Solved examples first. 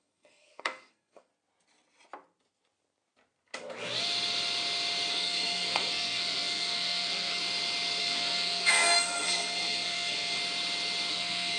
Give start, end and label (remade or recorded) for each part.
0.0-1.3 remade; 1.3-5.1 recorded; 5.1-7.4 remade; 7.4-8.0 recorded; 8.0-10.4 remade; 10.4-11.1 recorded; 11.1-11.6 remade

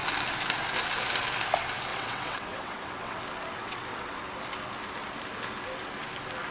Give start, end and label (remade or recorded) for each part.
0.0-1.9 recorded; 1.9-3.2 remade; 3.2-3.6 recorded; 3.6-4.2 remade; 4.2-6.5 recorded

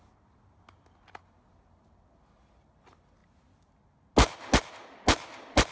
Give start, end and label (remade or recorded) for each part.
0.0-5.7 recorded